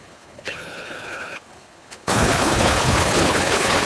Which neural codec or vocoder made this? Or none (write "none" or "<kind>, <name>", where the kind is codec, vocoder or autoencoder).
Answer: codec, HILCodec